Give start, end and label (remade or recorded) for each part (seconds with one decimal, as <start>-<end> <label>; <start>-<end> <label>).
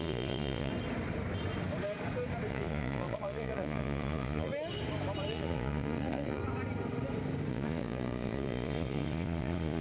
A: 0.0-0.7 remade; 0.7-2.5 recorded; 2.5-4.5 remade; 4.5-5.3 recorded; 5.3-6.4 remade; 6.4-7.5 recorded; 7.5-9.8 remade